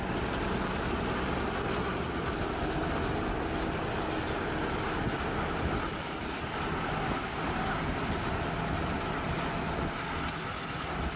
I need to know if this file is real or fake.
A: real